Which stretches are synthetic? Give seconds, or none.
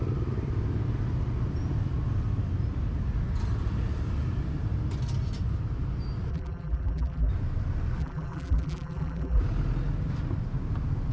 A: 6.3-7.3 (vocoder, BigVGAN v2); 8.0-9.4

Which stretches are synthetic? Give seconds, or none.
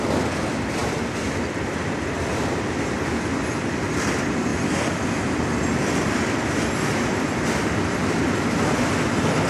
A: 0.8-2.0 (vocoder, BigVGAN v2); 4.5-5.2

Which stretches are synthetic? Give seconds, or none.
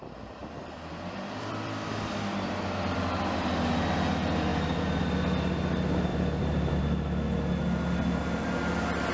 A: 0.4-3.5 (vocoder, BigVGAN v2); 4.5-5.0; 6.1-6.8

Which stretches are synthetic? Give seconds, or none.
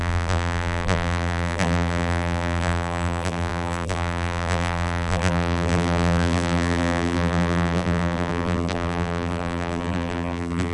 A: 0.0-10.7 (vocoder, BigVGAN v2)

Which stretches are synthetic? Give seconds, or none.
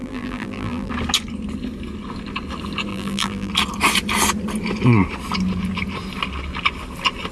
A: 0.0-0.9 (vocoder, BigVGAN v2); 2.9-3.5